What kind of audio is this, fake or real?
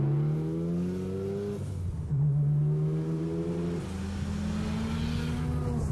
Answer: real